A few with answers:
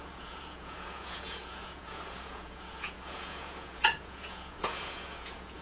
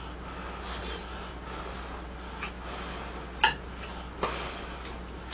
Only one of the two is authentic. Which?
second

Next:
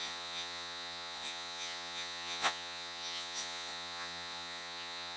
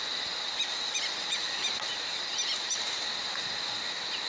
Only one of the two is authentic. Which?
second